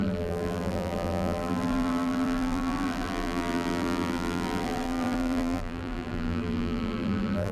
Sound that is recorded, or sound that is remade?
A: remade